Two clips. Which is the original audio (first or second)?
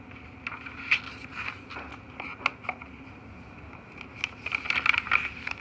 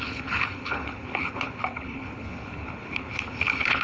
first